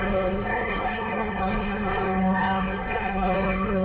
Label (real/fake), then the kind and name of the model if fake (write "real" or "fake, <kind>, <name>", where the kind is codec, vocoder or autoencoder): fake, codec, SNAC